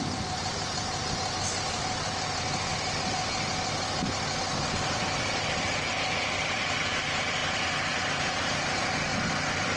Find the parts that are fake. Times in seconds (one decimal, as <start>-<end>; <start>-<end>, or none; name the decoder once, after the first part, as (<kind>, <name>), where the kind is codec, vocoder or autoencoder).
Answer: 0.0-2.7 (vocoder, BigVGAN v2); 5.2-9.1